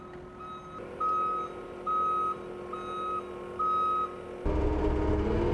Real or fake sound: real